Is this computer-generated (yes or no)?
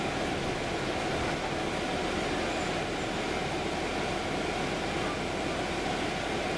no